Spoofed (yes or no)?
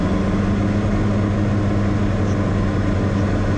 no